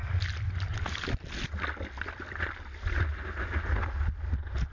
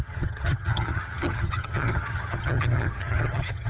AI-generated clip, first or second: second